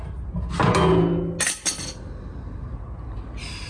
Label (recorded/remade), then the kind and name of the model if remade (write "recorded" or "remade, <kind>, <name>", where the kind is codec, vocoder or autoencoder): recorded